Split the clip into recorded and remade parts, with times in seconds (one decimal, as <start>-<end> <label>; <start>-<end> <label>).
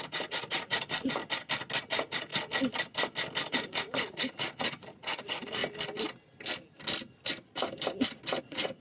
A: 0.0-1.2 remade; 1.2-1.9 recorded; 1.9-2.3 remade; 2.3-3.5 recorded; 3.5-5.6 remade; 5.6-8.4 recorded; 8.4-8.8 remade